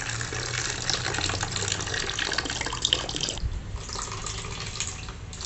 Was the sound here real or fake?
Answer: real